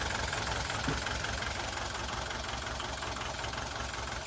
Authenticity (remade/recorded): recorded